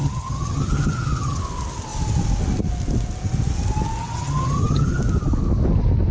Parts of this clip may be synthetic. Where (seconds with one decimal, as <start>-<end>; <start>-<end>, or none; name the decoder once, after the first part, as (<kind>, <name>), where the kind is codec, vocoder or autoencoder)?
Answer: 0.0-1.4 (vocoder, HiFi-GAN); 4.0-5.0